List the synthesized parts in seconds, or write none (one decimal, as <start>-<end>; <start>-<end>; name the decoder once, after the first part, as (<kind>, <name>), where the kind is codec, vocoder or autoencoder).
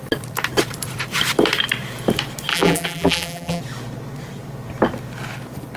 2.5-3.6 (vocoder, BigVGAN v2)